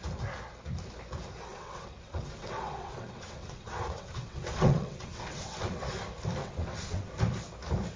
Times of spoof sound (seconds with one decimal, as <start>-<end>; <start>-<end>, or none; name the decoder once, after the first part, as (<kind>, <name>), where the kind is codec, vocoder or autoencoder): 1.5-5.9 (vocoder, WaveNeXt); 6.4-7.1

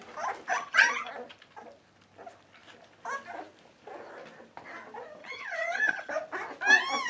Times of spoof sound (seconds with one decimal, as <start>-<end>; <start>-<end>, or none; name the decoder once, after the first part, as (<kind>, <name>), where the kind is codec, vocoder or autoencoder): 0.5-1.1 (vocoder, HiFi-GAN); 5.2-6.1

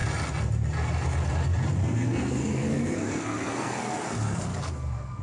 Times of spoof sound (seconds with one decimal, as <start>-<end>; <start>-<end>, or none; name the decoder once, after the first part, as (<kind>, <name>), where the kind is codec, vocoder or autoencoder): 1.8-5.2 (codec, SNAC)

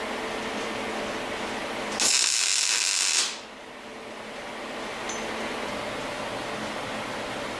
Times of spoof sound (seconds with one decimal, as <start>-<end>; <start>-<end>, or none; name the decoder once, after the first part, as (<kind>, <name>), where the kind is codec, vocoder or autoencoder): none

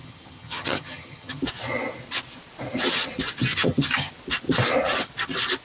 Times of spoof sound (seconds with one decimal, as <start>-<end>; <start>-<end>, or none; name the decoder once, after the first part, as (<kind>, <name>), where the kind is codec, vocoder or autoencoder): 0.0-1.4 (vocoder, HiFi-GAN); 3.5-4.1